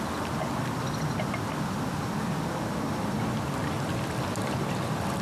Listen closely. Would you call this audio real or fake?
real